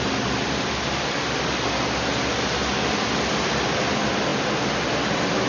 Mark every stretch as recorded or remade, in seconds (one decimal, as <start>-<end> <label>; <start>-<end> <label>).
0.0-5.5 recorded